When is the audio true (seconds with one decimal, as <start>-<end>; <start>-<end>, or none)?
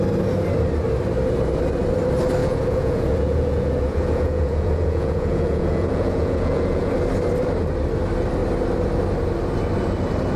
0.0-2.4; 6.9-10.4